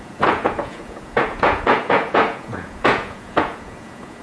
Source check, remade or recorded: remade